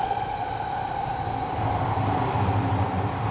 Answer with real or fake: fake